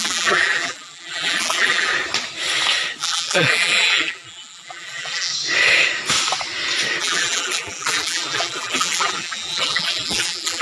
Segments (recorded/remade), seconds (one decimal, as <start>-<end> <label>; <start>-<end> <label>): 0.0-1.9 remade; 1.9-3.0 recorded; 3.0-5.3 remade; 5.3-7.0 recorded; 7.0-10.6 remade

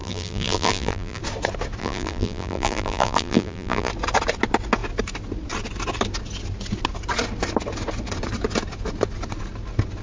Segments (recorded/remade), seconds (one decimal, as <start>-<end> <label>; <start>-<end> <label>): 0.0-1.2 remade; 1.2-1.8 recorded; 1.8-3.9 remade; 3.9-10.0 recorded

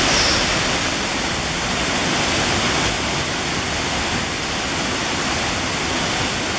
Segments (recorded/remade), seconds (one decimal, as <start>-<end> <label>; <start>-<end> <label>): 0.0-6.6 recorded

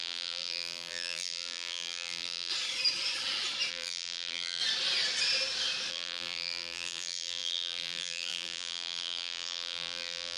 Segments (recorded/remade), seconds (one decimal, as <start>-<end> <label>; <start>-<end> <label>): 0.0-2.5 remade; 2.5-3.7 recorded; 3.7-4.6 remade; 4.6-5.9 recorded; 5.9-10.4 remade

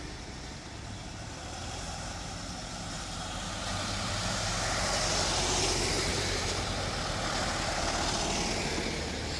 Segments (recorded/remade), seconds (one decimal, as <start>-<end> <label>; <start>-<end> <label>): 0.0-1.6 recorded; 1.6-4.5 remade; 4.5-6.1 recorded; 6.1-6.6 remade; 6.6-9.4 recorded

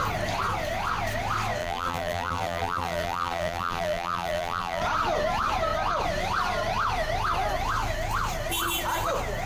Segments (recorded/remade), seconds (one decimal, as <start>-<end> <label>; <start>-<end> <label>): 0.0-1.6 recorded; 1.6-4.8 remade; 4.8-9.5 recorded

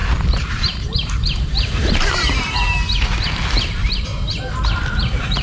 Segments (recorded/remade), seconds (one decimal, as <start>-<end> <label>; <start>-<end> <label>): 0.0-4.1 remade; 4.1-4.9 recorded; 4.9-5.4 remade

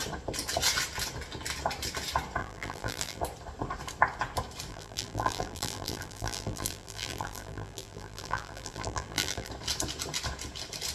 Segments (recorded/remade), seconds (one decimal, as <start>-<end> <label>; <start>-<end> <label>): 0.0-2.4 recorded; 2.4-3.2 remade; 3.2-4.7 recorded; 4.7-9.5 remade; 9.5-10.9 recorded